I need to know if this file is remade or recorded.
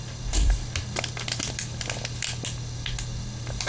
recorded